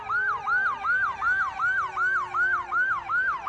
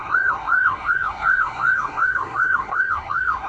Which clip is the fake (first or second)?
second